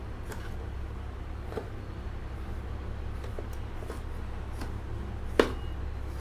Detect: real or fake real